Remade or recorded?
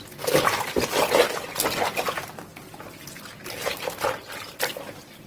recorded